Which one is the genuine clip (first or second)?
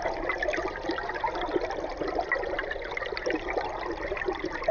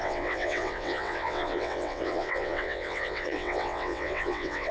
first